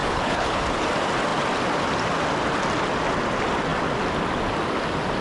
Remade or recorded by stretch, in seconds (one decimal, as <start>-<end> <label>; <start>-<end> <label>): 0.0-0.6 remade; 0.6-5.2 recorded